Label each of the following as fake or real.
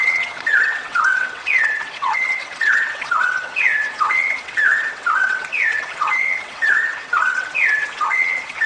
fake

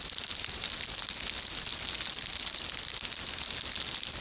real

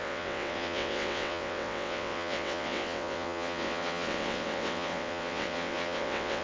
fake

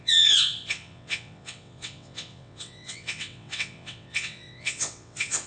fake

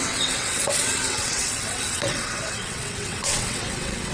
fake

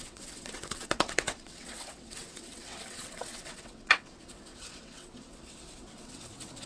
fake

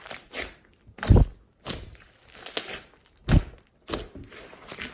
real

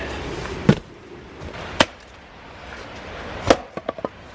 real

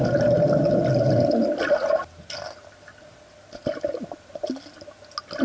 real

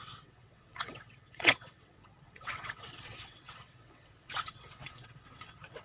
fake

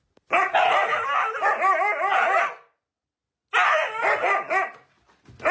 real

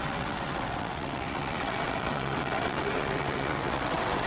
fake